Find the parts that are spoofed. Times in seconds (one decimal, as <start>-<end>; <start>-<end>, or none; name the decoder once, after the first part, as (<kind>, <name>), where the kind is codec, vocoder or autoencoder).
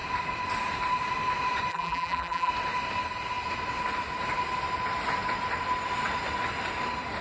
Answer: 1.7-2.5 (vocoder, BigVGAN v2)